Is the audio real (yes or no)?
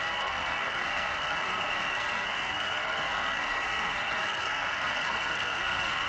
no